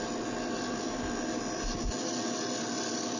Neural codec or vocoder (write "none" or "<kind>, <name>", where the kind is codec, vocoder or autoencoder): none